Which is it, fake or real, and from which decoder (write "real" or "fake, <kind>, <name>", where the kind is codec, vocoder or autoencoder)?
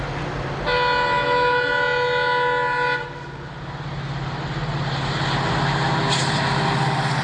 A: real